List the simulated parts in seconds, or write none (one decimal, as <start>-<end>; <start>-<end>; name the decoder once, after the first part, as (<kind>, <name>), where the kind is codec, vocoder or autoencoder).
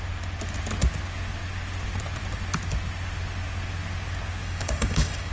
4.4-5.3 (codec, DAC)